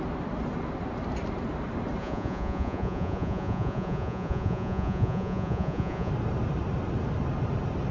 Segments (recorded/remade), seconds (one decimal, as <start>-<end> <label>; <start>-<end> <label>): 0.0-2.0 recorded; 2.0-6.1 remade; 6.1-7.9 recorded